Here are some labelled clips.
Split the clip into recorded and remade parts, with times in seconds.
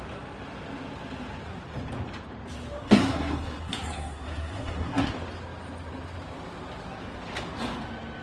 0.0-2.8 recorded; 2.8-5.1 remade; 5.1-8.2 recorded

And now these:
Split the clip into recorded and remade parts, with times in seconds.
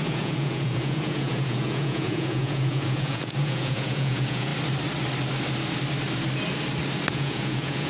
0.0-4.5 remade; 4.5-7.1 recorded; 7.1-7.9 remade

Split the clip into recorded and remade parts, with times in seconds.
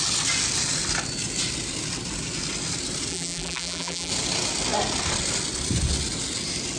0.0-3.1 recorded; 3.1-4.1 remade; 4.1-6.8 recorded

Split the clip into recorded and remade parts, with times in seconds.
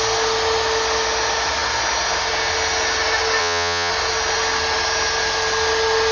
0.0-3.4 recorded; 3.4-3.9 remade; 3.9-6.1 recorded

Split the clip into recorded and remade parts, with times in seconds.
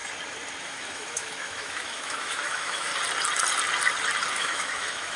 0.0-0.6 recorded; 0.6-2.9 remade; 2.9-4.3 recorded; 4.3-5.2 remade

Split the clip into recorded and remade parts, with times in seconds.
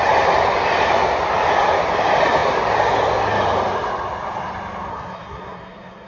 0.0-4.9 recorded; 4.9-6.1 remade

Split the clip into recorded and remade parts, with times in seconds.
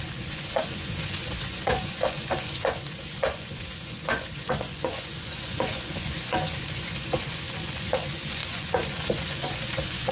0.0-10.1 remade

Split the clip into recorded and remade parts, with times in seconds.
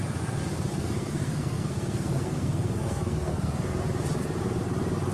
0.0-0.7 recorded; 0.7-3.8 remade; 3.8-5.1 recorded